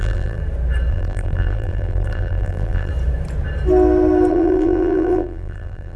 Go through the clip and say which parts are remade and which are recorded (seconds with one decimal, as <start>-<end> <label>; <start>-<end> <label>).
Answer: 0.0-0.4 remade; 0.4-0.9 recorded; 0.9-2.9 remade; 2.9-4.3 recorded; 4.3-6.0 remade